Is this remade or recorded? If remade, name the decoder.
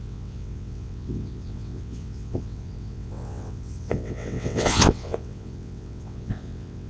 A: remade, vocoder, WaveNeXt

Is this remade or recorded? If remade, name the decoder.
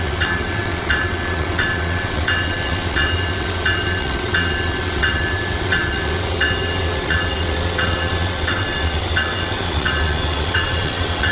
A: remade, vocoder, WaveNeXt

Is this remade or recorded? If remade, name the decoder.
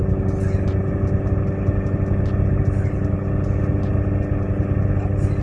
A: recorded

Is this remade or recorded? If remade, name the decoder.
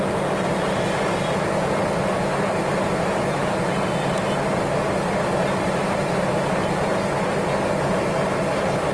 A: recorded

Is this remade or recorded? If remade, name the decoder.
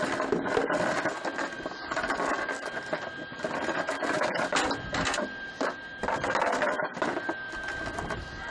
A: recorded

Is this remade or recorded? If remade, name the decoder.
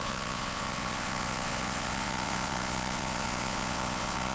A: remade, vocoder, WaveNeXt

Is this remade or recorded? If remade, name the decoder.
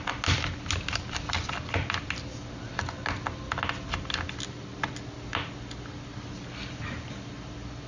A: recorded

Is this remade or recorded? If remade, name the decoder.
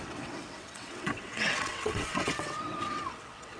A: remade, vocoder, WaveNeXt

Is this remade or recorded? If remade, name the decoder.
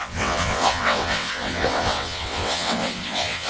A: remade, vocoder, WaveNeXt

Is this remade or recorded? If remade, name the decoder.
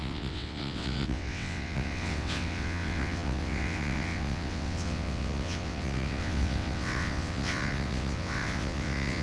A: remade, vocoder, WaveNeXt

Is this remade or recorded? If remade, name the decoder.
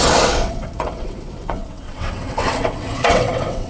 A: remade, vocoder, WaveNeXt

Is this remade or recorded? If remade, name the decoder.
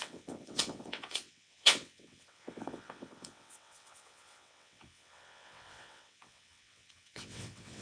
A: remade, vocoder, WaveNeXt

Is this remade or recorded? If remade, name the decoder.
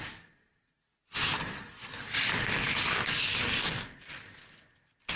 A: recorded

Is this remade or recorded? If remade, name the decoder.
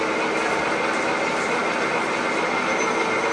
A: recorded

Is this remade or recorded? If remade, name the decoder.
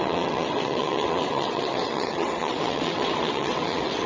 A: remade, vocoder, WaveNeXt